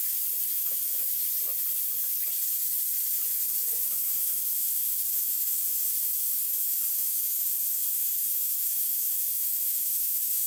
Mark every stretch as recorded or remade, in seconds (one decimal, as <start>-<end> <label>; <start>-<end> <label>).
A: 0.0-0.5 recorded; 0.5-1.2 remade; 1.2-3.8 recorded; 3.8-10.5 remade